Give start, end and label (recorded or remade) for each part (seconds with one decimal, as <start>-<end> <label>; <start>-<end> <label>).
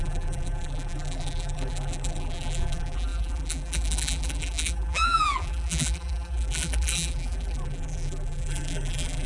0.0-9.3 remade